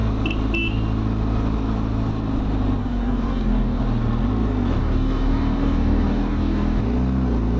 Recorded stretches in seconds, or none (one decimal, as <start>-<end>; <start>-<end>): 0.0-2.8; 3.8-4.8; 6.8-7.6

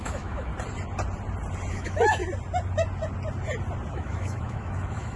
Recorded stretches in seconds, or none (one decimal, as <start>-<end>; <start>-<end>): 0.5-1.7; 2.2-3.9

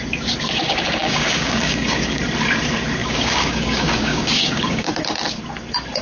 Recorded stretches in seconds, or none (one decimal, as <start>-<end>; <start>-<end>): 0.0-0.6; 2.2-3.0; 4.9-6.0

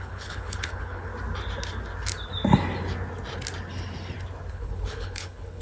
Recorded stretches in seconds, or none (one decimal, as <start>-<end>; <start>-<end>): 1.1-4.5

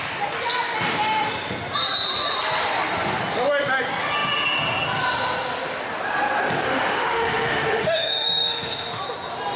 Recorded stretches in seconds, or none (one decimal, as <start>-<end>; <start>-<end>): 0.0-6.7; 9.0-9.6

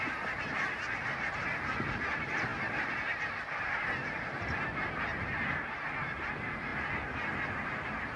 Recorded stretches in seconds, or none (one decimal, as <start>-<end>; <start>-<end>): 0.0-8.2

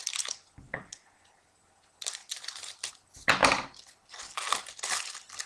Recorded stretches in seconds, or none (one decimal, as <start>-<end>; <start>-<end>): 0.0-5.5